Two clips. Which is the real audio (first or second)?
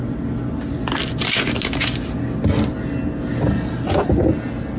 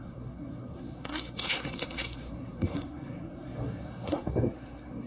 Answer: first